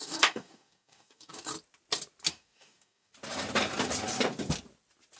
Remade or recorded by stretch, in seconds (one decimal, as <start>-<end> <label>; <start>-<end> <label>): 0.0-1.5 remade; 1.5-2.3 recorded; 2.3-3.1 remade; 3.1-5.2 recorded